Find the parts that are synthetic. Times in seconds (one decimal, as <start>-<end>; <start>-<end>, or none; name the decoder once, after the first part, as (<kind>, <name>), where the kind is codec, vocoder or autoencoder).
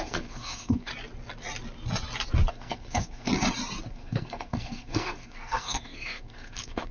0.0-0.9 (codec, SNAC); 2.5-3.3; 3.9-6.9